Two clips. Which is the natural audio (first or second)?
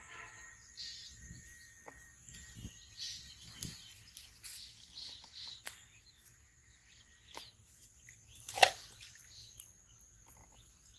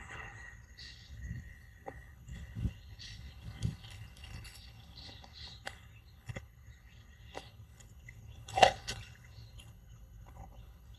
first